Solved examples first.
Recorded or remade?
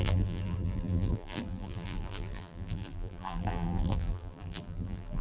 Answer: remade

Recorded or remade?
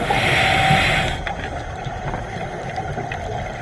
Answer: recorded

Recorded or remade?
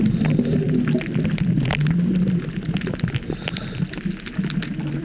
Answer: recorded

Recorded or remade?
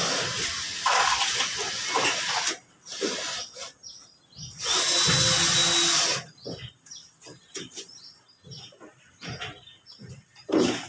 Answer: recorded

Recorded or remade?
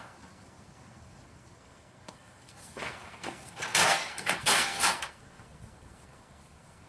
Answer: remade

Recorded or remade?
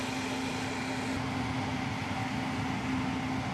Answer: recorded